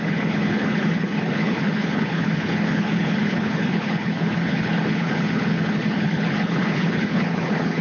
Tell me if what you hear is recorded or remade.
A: remade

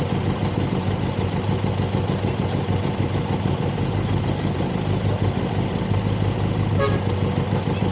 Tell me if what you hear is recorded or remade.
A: recorded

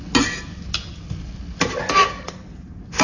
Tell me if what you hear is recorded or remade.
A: recorded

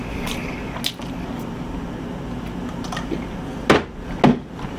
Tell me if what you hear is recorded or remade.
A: recorded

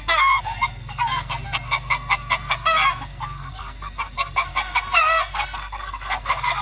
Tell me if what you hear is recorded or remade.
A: remade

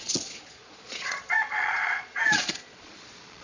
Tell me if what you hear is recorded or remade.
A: remade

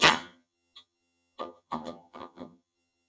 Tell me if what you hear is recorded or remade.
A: remade